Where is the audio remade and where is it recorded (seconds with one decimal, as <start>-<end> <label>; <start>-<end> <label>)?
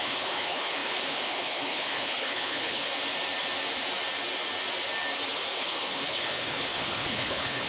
0.0-2.9 remade; 2.9-5.6 recorded; 5.6-7.7 remade